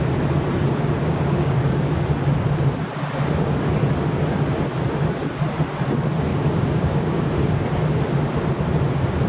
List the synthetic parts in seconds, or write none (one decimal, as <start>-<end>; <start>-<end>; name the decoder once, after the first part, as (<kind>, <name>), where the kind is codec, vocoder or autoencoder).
1.0-1.6 (codec, DAC); 6.3-7.3